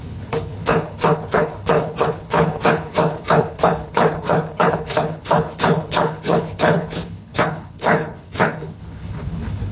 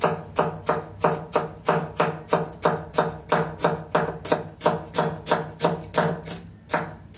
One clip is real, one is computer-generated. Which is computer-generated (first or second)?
first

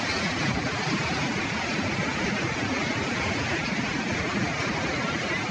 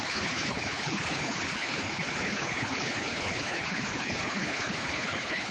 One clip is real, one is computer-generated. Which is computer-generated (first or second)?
second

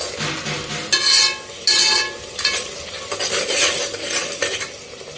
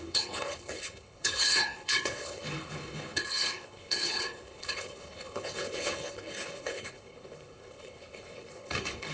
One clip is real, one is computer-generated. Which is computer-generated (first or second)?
second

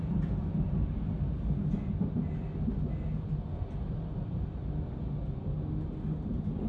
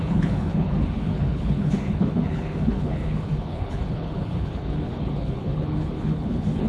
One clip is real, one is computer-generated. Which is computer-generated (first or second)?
second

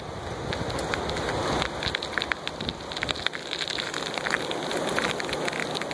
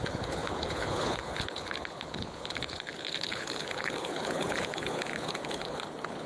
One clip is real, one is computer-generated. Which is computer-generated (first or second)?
second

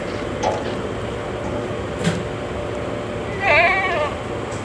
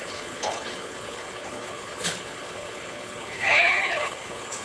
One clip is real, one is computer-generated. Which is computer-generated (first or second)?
second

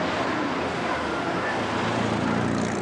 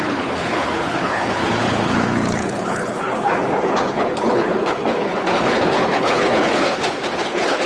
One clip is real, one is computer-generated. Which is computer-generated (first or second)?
second